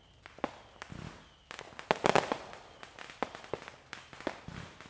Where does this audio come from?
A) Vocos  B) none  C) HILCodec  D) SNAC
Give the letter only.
B